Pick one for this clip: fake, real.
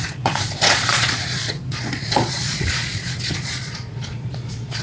fake